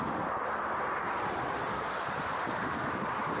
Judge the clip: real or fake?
real